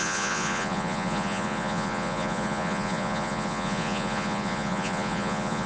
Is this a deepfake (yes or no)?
yes